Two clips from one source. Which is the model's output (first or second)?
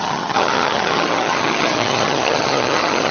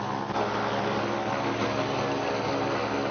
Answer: first